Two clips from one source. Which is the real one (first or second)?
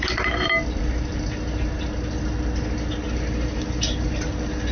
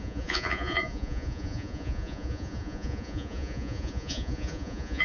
first